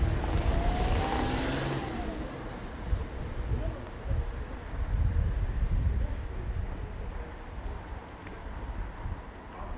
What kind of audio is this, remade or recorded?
recorded